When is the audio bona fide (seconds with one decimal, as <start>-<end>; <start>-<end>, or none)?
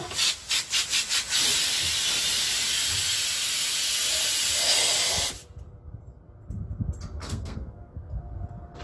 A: 0.0-7.2; 8.2-8.8